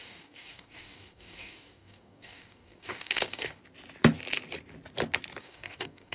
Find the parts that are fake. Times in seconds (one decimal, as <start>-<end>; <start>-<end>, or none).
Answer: 0.0-3.6; 5.4-6.1